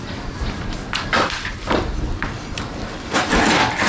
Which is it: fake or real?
real